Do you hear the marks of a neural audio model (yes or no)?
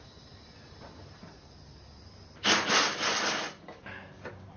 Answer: no